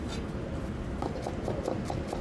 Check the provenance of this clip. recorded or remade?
recorded